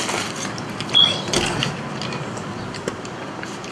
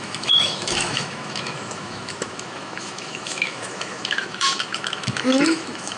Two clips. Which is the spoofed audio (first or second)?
second